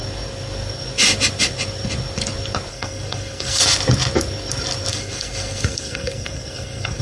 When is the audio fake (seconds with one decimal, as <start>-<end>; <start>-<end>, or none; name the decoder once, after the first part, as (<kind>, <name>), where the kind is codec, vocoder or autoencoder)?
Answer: 2.7-3.6 (codec, SNAC); 4.9-7.0